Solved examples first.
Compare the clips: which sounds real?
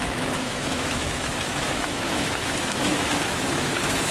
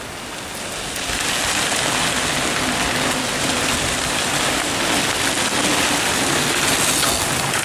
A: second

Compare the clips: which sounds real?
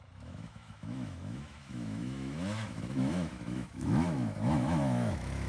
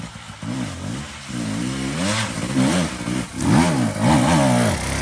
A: second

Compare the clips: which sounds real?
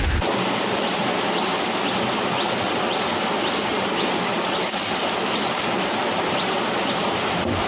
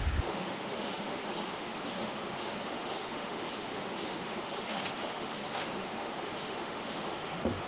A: first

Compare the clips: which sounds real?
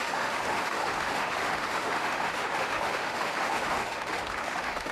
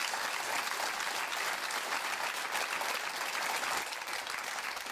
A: second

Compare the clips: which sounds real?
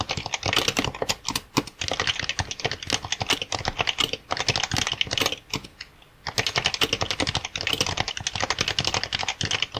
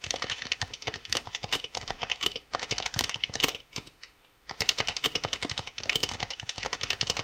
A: first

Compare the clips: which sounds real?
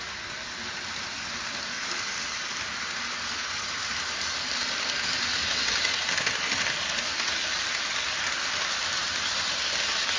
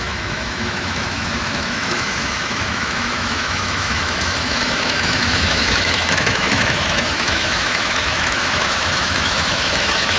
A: first